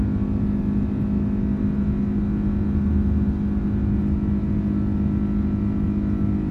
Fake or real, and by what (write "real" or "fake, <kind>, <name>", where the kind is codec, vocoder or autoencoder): real